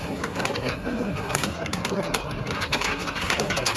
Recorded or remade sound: remade